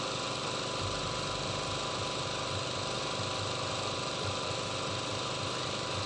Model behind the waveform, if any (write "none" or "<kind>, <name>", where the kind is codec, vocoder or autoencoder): none